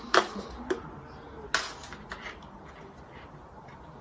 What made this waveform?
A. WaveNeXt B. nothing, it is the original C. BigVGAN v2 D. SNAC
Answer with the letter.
B